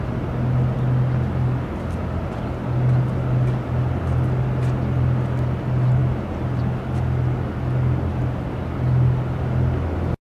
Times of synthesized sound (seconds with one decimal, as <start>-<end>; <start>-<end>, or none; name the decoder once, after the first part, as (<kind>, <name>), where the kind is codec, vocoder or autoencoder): none